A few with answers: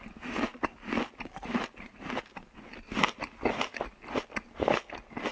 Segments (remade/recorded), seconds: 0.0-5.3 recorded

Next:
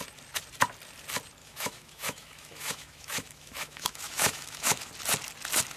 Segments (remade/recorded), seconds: 0.0-1.4 recorded; 1.4-4.9 remade; 4.9-5.8 recorded

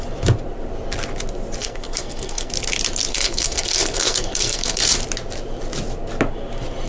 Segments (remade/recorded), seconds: 0.0-1.6 recorded; 1.6-2.5 remade; 2.5-3.1 recorded; 3.1-4.9 remade; 4.9-6.9 recorded